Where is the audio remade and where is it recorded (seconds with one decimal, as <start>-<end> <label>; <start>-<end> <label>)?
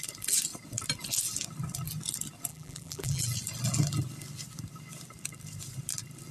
0.0-2.5 recorded; 2.5-3.2 remade; 3.2-6.3 recorded